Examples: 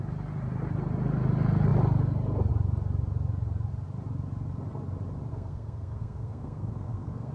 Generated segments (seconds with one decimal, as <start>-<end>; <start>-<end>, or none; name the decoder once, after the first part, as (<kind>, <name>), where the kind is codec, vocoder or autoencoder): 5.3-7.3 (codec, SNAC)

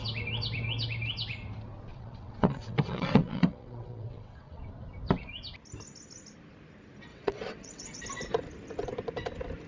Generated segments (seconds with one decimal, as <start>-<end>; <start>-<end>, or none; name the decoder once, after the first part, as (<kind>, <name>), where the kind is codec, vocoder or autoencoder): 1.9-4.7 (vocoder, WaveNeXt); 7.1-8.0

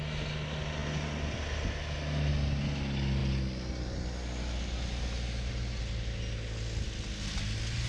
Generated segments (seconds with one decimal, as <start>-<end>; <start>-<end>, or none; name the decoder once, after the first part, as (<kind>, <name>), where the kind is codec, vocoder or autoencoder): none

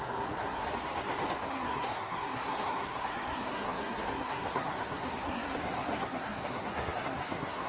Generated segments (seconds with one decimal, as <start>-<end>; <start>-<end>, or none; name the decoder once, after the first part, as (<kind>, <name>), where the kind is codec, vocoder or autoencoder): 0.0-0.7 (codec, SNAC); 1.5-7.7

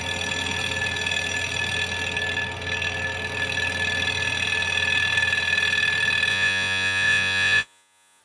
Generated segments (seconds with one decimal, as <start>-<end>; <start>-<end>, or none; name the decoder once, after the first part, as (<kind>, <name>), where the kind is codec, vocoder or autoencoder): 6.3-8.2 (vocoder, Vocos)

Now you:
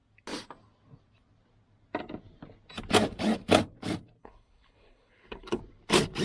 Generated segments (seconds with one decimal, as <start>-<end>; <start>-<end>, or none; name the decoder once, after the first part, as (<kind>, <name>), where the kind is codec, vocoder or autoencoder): 4.2-5.6 (codec, HILCodec)